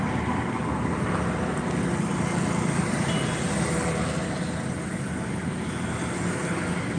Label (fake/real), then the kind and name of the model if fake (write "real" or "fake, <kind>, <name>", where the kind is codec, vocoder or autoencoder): real